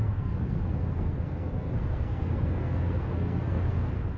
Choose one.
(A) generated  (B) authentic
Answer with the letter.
A